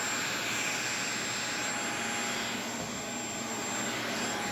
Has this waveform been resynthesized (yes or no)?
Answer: no